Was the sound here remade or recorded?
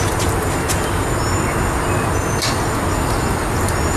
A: recorded